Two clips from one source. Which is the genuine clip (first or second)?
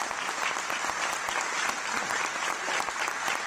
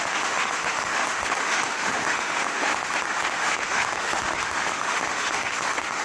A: first